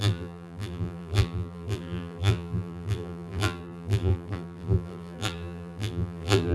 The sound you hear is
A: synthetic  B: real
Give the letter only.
A